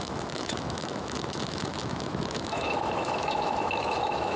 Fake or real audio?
fake